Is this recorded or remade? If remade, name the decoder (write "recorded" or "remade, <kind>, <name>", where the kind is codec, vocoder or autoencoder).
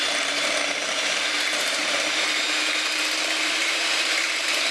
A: remade, vocoder, BigVGAN v2